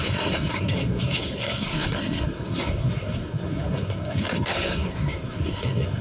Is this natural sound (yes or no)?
no